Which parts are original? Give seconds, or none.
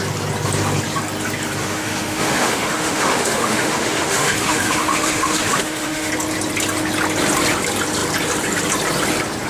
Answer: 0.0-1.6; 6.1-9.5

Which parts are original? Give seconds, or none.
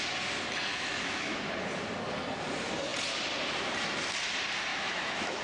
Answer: 0.0-0.7; 1.5-4.7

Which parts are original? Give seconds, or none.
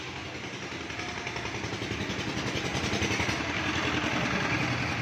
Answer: 0.0-5.0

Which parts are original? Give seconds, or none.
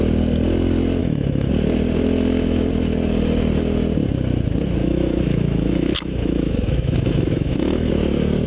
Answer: 0.0-1.0; 1.5-4.8; 7.9-8.5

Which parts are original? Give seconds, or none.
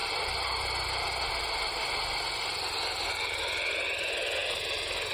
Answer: 0.0-5.1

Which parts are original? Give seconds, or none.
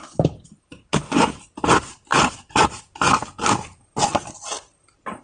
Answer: 0.0-5.2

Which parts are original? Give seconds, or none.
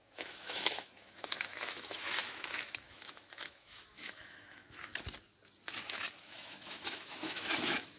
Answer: 4.9-5.8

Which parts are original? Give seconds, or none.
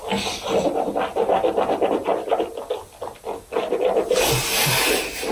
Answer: 0.0-5.3